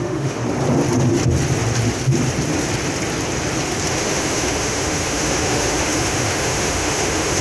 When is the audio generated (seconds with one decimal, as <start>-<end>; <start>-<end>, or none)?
0.0-0.4; 3.9-7.4